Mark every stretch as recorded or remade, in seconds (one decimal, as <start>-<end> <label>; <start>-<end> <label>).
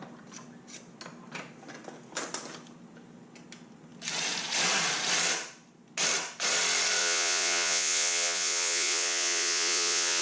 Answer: 0.0-7.0 recorded; 7.0-10.2 remade